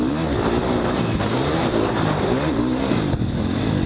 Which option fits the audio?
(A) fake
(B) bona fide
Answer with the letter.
B